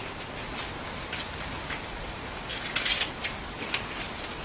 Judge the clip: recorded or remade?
recorded